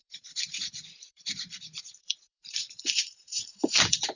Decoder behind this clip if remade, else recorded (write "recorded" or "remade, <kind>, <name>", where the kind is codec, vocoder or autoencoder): remade, vocoder, BigVGAN v2